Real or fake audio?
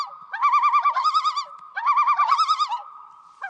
fake